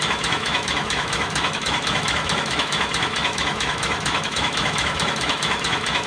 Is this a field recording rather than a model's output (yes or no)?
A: no